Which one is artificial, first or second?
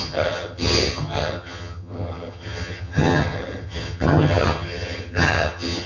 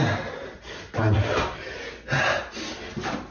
first